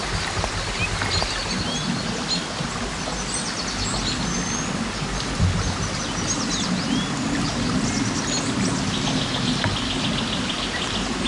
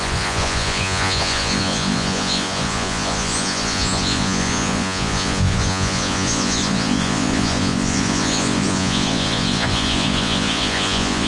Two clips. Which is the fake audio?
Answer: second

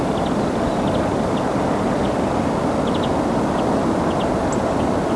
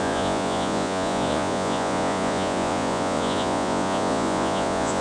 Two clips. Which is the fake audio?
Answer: second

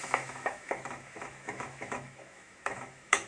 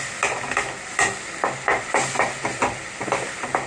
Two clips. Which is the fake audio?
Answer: first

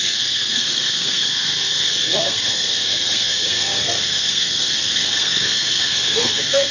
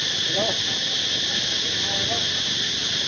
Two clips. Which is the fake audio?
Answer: first